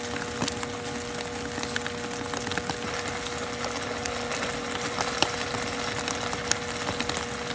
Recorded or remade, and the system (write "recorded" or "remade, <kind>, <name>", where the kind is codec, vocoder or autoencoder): recorded